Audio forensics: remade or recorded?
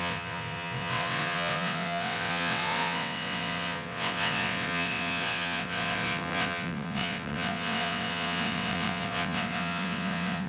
remade